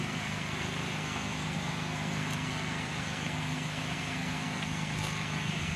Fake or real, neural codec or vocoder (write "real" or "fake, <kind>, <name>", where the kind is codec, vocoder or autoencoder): fake, codec, SNAC